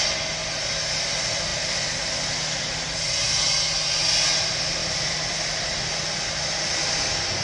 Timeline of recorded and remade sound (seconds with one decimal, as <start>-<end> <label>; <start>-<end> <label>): 0.0-7.4 recorded